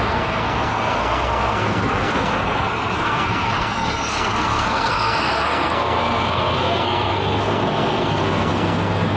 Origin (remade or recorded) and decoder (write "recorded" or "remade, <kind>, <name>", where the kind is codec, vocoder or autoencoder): remade, codec, SNAC